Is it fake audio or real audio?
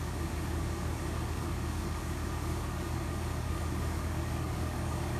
fake